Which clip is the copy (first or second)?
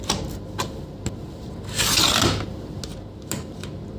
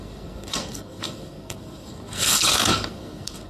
second